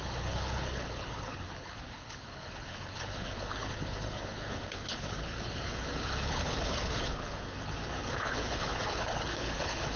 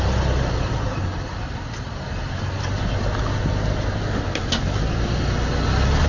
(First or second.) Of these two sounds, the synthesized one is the first